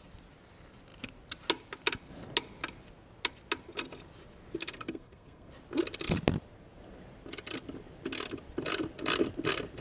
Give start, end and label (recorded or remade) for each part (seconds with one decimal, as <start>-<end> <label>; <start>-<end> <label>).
0.0-4.7 recorded; 4.7-5.5 remade; 5.5-9.8 recorded